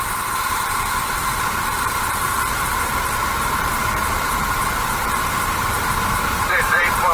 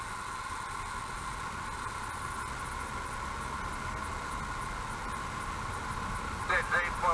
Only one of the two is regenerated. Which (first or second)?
first